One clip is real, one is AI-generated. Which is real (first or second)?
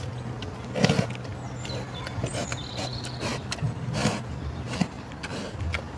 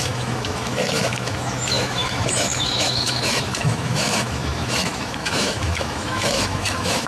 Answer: first